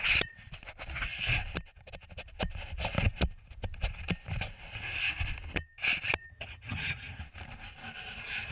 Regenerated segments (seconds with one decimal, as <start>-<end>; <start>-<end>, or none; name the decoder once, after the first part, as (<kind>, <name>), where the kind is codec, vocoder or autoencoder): 6.3-7.2 (vocoder, HiFi-GAN)